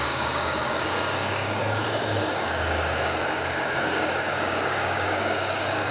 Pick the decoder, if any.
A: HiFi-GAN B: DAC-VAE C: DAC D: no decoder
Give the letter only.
C